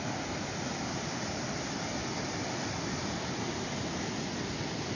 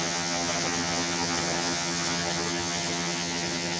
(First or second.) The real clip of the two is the first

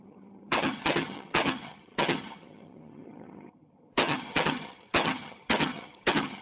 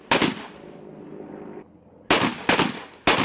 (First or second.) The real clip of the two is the second